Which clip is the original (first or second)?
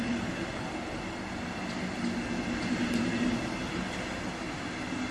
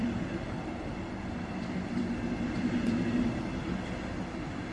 first